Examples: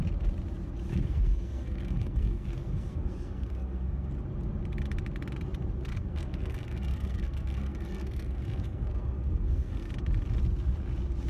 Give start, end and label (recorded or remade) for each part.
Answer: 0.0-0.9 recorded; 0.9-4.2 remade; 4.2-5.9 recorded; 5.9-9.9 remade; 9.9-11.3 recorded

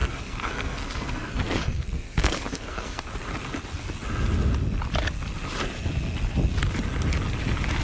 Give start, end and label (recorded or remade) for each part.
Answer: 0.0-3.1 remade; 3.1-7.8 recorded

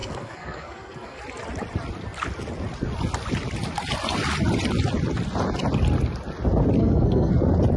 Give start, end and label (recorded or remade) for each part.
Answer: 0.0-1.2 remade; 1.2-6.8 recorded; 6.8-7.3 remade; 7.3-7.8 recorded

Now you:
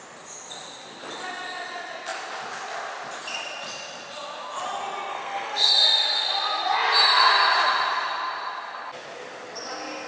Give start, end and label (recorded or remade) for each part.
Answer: 0.0-5.1 recorded; 5.1-5.7 remade; 5.7-10.1 recorded

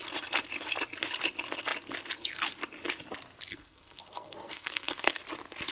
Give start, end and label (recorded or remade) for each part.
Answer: 0.0-3.5 recorded; 3.5-5.2 remade; 5.2-5.7 recorded